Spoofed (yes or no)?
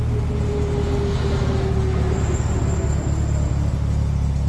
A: no